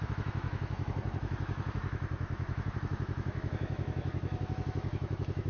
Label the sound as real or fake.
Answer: fake